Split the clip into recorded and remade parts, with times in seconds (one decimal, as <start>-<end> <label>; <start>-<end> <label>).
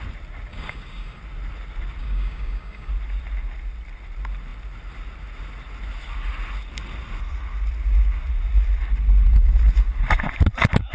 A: 0.0-0.5 recorded; 0.5-1.2 remade; 1.2-2.0 recorded; 2.0-2.9 remade; 2.9-10.9 recorded